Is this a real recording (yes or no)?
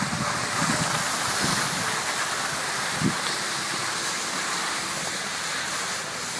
yes